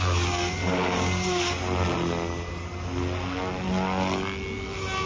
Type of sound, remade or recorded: recorded